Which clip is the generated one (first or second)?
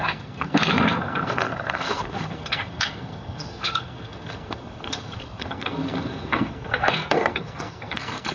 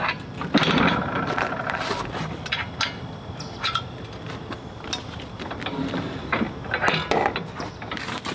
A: first